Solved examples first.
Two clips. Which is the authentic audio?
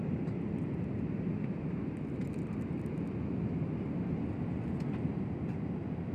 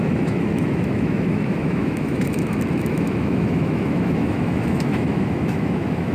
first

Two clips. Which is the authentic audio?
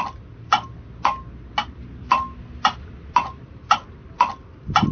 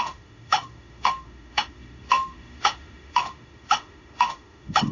first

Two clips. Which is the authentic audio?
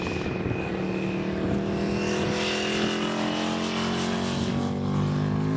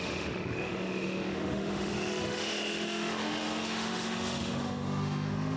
first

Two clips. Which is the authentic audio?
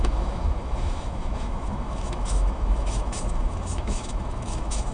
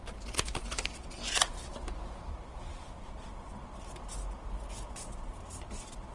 second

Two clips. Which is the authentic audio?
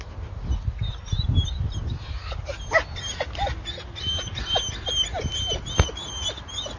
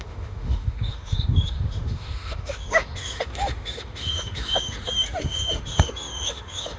first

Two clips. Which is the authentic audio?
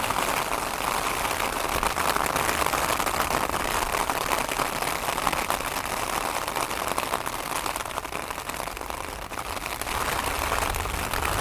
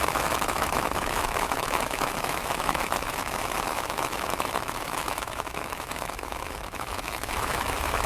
first